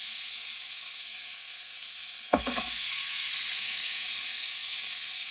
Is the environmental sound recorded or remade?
remade